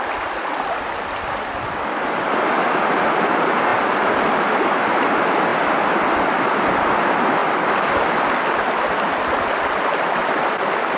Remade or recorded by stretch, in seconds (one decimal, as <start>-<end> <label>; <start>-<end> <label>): 0.0-11.0 recorded